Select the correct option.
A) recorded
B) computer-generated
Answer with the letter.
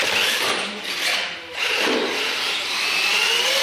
A